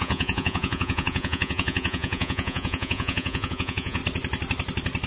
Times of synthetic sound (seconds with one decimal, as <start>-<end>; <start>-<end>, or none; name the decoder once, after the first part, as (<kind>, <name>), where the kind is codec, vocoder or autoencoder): 0.0-4.0 (vocoder, Vocos)